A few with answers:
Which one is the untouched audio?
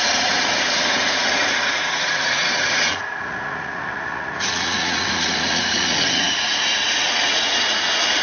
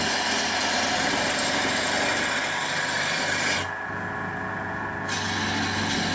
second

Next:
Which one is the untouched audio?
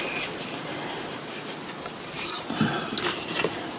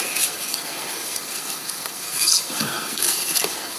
first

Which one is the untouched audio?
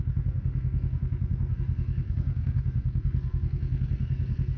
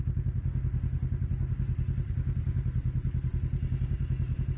second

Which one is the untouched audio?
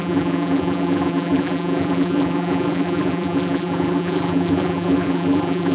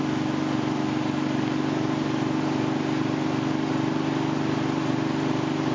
second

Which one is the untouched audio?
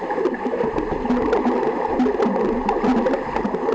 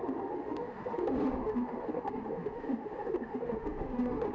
first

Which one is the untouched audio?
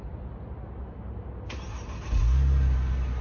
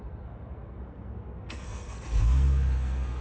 first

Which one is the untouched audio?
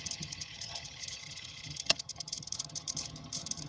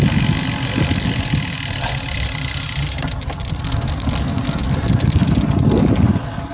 second